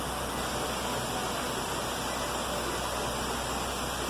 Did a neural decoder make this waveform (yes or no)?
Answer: no